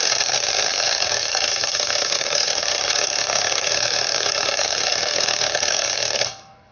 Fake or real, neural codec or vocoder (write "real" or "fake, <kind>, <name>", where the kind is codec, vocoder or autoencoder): fake, codec, SNAC